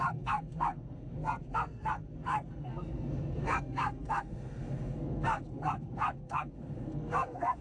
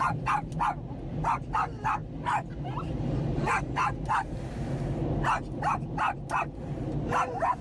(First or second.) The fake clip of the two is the first